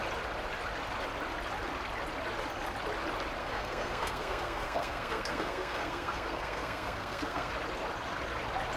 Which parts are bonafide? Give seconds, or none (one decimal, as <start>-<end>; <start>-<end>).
0.0-3.4; 7.5-8.8